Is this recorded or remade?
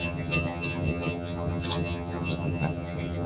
remade